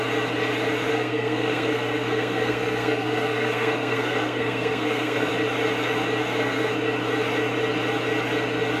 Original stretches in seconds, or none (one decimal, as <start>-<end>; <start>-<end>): 0.0-0.9; 5.3-6.2; 6.7-8.8